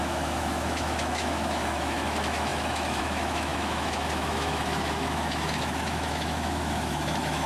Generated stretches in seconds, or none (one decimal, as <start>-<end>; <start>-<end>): 0.0-7.5